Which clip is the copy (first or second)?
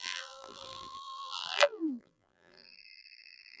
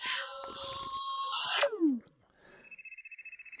first